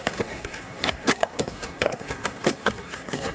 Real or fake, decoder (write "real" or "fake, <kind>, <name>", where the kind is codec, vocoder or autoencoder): fake, codec, SNAC